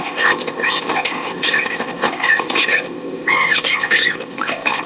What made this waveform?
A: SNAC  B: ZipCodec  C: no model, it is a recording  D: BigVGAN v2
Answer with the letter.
B